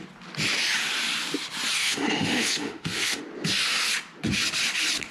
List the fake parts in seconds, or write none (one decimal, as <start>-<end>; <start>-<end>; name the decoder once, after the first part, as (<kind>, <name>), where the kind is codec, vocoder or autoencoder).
1.8-3.2 (autoencoder, DAC-VAE)